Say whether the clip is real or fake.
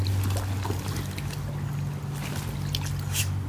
real